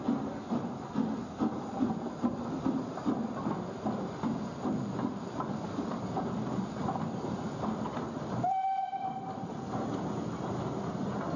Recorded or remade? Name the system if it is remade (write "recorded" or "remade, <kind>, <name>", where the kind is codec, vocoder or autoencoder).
recorded